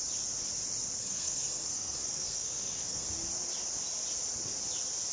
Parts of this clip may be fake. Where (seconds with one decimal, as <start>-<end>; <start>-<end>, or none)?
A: 1.0-3.1